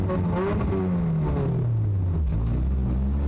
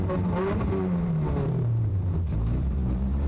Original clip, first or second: first